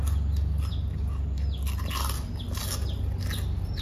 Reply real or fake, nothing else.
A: real